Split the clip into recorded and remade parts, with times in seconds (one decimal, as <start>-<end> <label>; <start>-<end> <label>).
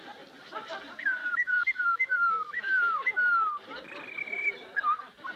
0.0-1.2 recorded; 1.2-3.5 remade; 3.5-5.4 recorded